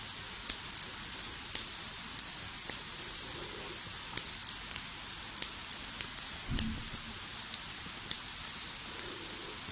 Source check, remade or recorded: recorded